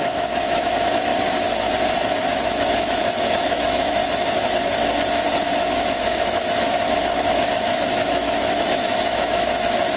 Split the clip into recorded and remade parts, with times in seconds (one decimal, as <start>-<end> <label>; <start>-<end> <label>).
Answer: 0.0-1.1 remade; 1.1-2.3 recorded; 2.3-4.0 remade; 4.0-5.6 recorded; 5.6-10.0 remade

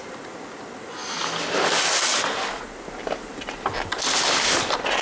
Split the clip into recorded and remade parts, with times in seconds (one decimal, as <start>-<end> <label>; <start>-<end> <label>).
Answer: 0.0-5.0 recorded